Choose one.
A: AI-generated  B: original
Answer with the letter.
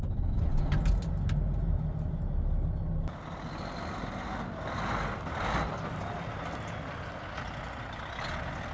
B